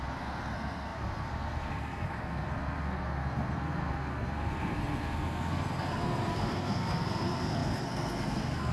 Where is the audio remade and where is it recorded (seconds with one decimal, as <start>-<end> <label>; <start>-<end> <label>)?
0.0-8.7 remade